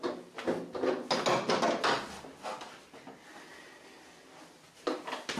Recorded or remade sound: recorded